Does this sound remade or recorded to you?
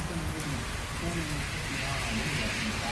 recorded